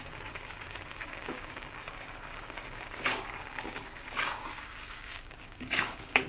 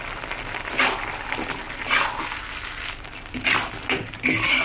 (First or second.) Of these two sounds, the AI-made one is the first